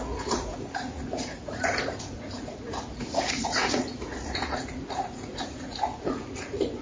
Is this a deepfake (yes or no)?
yes